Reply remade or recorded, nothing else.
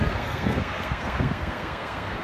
remade